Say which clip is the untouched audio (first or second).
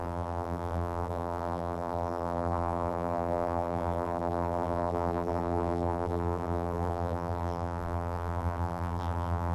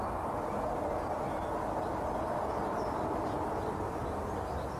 second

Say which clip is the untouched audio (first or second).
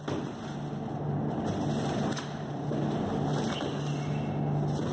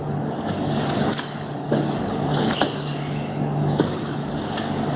first